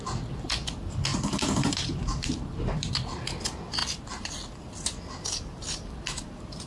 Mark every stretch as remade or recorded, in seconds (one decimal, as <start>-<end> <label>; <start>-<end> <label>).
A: 0.0-1.1 recorded; 1.1-3.4 remade; 3.4-6.7 recorded